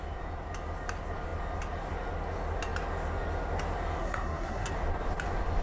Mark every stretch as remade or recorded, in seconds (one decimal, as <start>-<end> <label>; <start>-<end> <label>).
0.0-4.0 recorded; 4.0-4.7 remade; 4.7-5.6 recorded